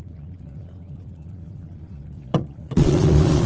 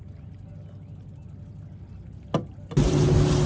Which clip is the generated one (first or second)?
first